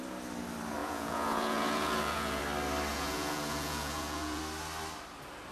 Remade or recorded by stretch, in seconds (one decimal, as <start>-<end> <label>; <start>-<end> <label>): 0.0-0.8 recorded; 0.8-2.4 remade; 2.4-2.9 recorded; 2.9-4.4 remade; 4.4-5.5 recorded